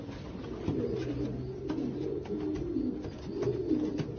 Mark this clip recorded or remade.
recorded